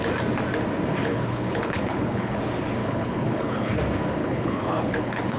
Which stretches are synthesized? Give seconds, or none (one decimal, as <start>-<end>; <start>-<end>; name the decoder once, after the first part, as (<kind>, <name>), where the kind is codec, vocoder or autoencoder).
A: 1.1-2.4 (codec, HILCodec); 2.8-3.8; 4.2-5.4